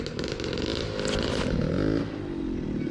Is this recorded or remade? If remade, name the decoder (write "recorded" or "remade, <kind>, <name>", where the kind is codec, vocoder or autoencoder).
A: recorded